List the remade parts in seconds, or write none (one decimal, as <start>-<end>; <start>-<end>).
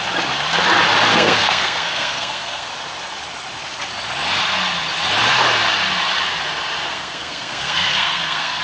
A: 1.1-2.7; 6.9-8.6